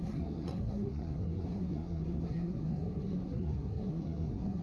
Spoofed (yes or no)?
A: yes